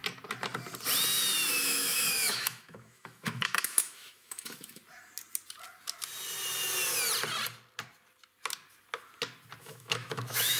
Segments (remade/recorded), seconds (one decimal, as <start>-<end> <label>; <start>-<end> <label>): 0.0-1.5 recorded; 1.5-4.8 remade; 4.8-9.6 recorded; 9.6-10.6 remade